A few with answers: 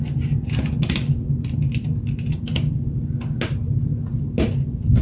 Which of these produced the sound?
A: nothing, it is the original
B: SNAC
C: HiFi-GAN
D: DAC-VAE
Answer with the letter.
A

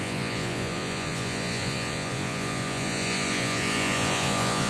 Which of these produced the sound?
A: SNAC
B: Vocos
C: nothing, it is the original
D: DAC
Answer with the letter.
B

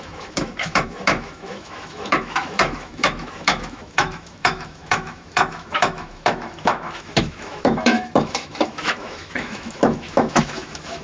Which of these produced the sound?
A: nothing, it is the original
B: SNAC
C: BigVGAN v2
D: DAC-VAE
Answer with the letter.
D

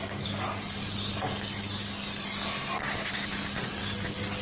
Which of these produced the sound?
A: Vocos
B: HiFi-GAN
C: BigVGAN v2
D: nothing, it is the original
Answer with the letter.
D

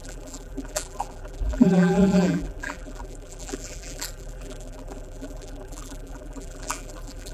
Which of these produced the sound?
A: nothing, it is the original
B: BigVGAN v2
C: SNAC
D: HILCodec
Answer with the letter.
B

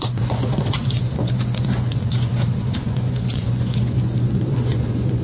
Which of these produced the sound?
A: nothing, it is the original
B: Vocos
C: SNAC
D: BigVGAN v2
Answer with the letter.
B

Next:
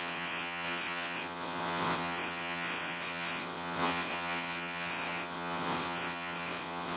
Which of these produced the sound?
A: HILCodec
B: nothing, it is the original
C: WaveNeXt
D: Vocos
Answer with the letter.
C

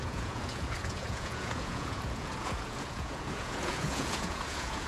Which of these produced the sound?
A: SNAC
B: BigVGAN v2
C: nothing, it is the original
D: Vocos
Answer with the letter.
D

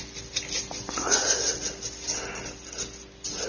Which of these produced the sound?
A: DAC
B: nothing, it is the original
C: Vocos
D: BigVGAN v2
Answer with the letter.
B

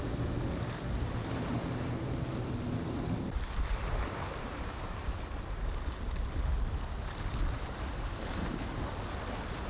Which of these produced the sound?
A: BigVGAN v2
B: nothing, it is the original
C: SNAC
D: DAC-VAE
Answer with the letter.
B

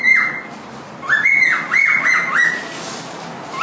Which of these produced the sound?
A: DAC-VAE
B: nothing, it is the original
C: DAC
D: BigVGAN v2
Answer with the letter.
B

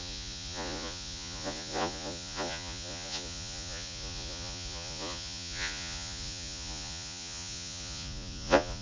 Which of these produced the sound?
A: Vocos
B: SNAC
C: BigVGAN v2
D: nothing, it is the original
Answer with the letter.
A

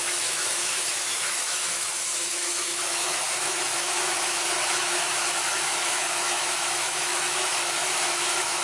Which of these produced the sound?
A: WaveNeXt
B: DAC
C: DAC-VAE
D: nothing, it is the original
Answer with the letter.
C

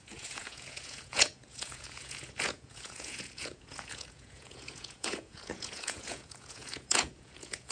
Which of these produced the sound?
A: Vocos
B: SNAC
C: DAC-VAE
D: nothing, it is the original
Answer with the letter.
A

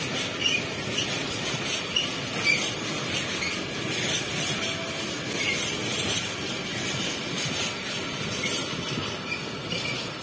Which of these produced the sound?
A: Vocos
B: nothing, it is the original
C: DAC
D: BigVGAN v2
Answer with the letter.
B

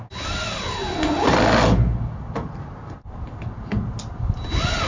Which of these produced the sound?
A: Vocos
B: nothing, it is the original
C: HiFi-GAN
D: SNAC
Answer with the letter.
B